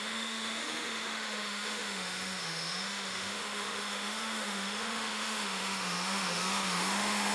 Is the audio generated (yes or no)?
yes